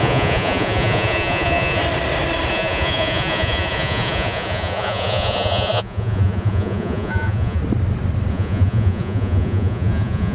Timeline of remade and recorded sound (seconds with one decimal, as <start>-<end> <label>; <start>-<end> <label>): 0.0-1.8 remade; 1.8-2.5 recorded; 2.5-7.6 remade; 7.6-8.3 recorded; 8.3-10.3 remade